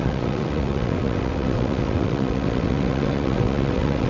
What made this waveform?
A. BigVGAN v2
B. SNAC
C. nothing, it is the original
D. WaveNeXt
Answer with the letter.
D